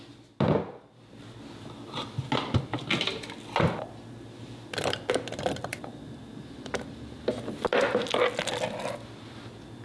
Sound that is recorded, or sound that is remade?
recorded